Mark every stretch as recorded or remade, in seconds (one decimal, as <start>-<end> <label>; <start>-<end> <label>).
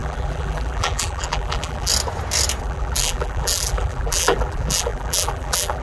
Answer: 0.0-1.9 remade; 1.9-2.6 recorded; 2.6-5.8 remade